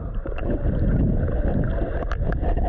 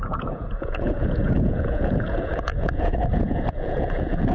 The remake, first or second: second